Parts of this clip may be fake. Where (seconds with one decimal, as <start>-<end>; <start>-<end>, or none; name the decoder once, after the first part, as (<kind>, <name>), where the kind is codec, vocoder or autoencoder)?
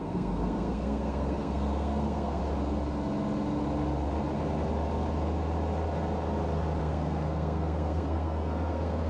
0.0-2.4 (codec, SNAC); 6.8-9.1